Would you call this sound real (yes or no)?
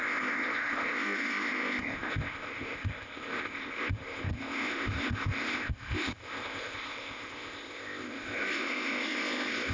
no